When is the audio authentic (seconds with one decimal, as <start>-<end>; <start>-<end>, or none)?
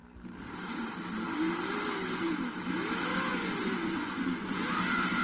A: 0.0-3.1; 4.7-5.2